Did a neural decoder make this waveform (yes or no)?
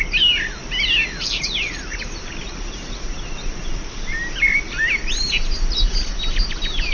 no